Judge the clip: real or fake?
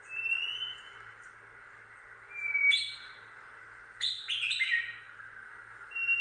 real